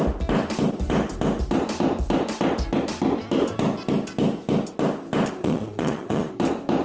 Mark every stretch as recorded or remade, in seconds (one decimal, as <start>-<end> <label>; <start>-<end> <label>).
0.0-5.4 recorded; 5.4-6.3 remade; 6.3-6.8 recorded